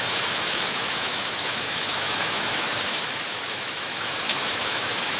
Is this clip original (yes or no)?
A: no